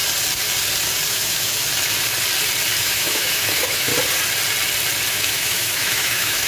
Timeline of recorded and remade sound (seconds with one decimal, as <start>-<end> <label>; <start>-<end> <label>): 0.0-1.1 recorded; 1.1-1.6 remade; 1.6-2.8 recorded; 2.8-3.9 remade; 3.9-5.1 recorded; 5.1-6.5 remade